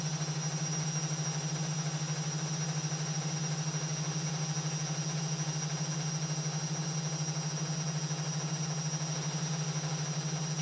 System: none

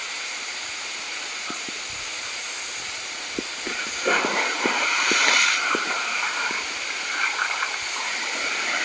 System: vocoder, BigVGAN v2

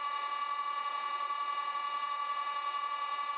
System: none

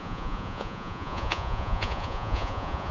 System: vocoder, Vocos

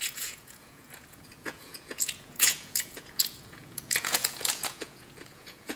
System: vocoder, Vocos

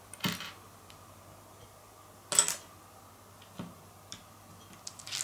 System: none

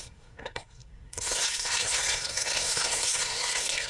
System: codec, SNAC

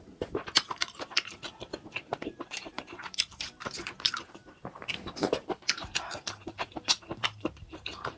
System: vocoder, BigVGAN v2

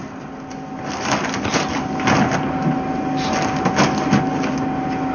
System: none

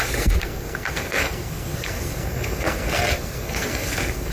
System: codec, SNAC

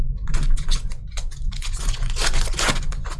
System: vocoder, Vocos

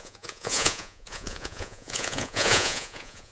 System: vocoder, Vocos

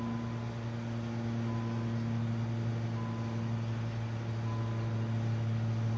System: none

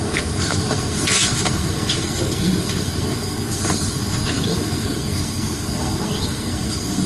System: codec, SNAC